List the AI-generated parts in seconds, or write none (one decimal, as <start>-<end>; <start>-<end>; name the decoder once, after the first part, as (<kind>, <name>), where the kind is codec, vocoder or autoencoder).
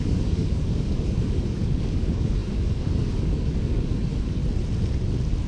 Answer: 0.0-4.4 (codec, DAC)